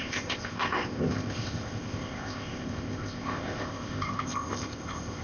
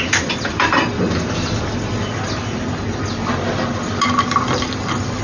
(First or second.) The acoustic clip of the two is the second